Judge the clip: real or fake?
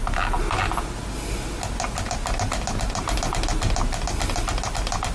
real